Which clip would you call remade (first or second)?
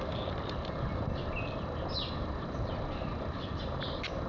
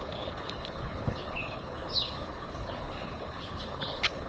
second